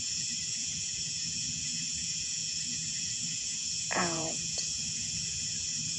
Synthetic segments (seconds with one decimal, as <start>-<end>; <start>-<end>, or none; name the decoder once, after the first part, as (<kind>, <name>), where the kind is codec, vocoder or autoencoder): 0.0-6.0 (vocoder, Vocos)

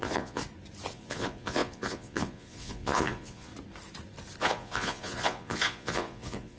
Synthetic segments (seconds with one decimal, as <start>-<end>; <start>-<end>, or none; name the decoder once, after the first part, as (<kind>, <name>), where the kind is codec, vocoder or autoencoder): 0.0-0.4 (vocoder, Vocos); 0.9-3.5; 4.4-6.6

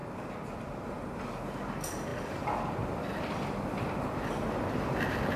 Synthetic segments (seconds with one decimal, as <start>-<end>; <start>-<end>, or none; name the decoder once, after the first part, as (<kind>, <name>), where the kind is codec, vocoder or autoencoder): none

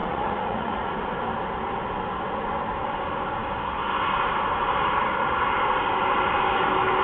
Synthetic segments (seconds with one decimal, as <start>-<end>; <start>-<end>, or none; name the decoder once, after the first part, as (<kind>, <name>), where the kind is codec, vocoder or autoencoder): 0.0-0.9 (vocoder, Vocos)

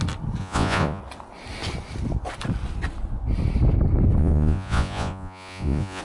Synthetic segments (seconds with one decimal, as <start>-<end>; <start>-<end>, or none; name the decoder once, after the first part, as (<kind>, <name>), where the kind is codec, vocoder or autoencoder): 0.4-1.0 (vocoder, Vocos); 4.2-6.0